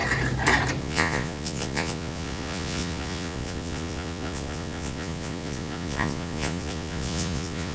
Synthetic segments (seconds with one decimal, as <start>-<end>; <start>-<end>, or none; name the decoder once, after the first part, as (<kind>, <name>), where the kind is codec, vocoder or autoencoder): 0.8-7.7 (vocoder, Vocos)